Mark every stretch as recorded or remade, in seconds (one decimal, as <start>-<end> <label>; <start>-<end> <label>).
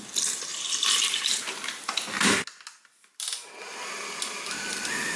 0.0-5.2 recorded